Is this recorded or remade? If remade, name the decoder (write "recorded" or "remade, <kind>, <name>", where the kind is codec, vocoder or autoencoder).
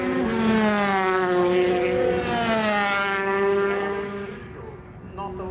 recorded